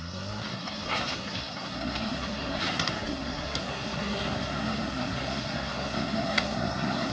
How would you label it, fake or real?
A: fake